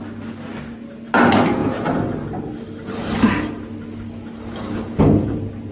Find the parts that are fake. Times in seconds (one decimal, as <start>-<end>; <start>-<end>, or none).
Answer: none